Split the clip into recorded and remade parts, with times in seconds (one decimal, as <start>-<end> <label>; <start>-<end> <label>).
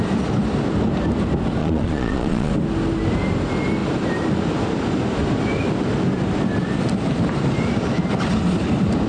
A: 0.0-1.6 recorded; 1.6-2.5 remade; 2.5-9.1 recorded